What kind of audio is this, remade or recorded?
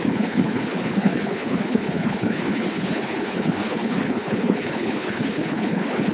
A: remade